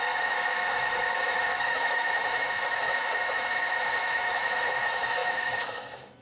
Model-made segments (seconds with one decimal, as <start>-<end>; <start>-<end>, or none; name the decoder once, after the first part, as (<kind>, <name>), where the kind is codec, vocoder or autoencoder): 0.0-6.2 (autoencoder, DAC-VAE)